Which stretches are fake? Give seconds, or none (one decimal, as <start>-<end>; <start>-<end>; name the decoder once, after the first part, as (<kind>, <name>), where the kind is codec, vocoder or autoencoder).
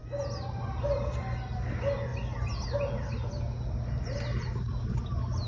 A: none